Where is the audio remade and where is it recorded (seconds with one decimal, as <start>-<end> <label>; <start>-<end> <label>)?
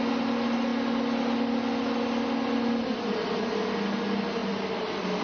0.0-5.2 recorded